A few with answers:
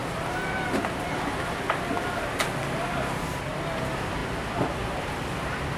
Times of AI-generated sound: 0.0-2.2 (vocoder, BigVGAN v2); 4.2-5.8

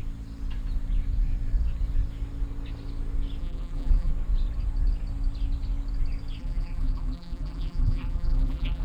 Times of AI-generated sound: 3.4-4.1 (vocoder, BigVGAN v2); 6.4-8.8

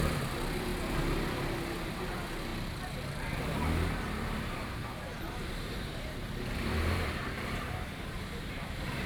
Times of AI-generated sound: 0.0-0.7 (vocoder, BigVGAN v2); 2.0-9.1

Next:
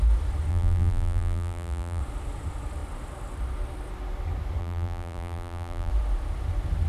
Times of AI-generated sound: 0.5-2.0 (vocoder, BigVGAN v2); 4.6-5.9

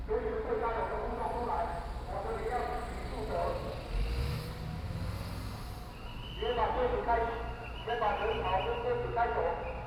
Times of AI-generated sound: 0.9-1.6 (vocoder, BigVGAN v2)

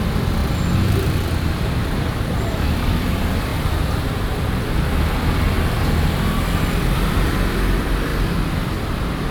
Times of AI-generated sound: 0.4-3.1 (vocoder, BigVGAN v2)

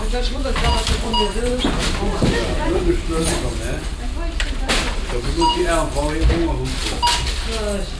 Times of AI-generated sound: none

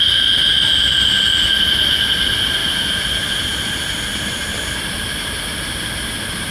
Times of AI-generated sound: none